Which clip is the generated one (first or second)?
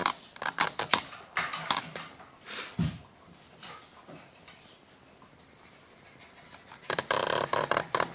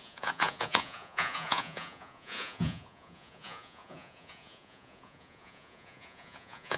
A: second